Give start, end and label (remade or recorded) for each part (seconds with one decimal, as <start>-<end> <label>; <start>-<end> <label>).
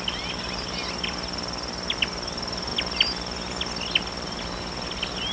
0.0-5.3 recorded